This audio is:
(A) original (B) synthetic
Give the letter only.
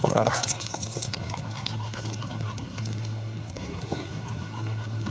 B